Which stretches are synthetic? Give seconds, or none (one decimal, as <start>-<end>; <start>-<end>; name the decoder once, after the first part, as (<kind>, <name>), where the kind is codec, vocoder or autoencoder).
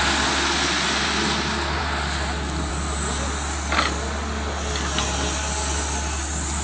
none